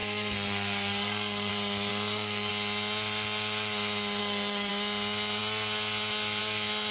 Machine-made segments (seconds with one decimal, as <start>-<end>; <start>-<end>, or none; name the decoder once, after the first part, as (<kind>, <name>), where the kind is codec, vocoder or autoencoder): 0.0-1.5 (codec, SNAC); 1.9-2.5; 4.2-4.7